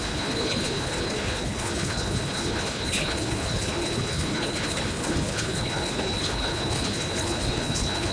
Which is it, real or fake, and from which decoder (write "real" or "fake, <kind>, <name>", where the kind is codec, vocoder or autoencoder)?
fake, codec, HILCodec